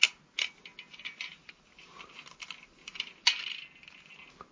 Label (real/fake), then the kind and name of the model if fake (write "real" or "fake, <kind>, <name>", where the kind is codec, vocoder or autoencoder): real